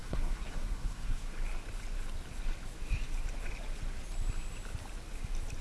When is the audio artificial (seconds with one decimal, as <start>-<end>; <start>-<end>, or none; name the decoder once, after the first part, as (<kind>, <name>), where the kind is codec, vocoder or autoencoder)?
0.0-1.3 (codec, SNAC)